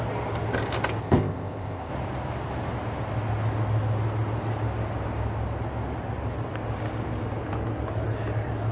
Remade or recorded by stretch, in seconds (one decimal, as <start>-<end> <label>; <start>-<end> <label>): 0.0-1.0 recorded; 1.0-1.9 remade; 1.9-8.7 recorded